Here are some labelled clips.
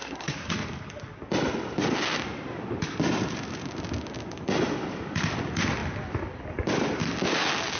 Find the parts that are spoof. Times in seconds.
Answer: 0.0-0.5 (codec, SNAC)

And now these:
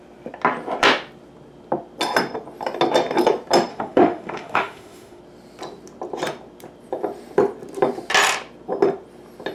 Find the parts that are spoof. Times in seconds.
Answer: 3.7-5.2 (autoencoder, DAC-VAE)